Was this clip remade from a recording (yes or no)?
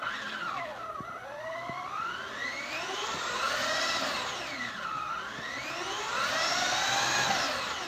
no